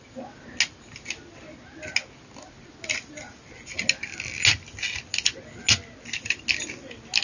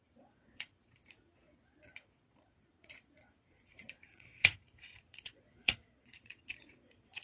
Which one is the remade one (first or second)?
second